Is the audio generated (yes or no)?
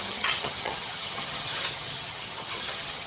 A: yes